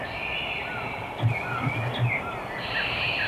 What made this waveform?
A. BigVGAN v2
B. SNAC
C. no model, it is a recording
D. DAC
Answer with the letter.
C